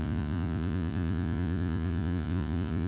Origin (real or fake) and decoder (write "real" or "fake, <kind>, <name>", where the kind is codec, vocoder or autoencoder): fake, vocoder, Vocos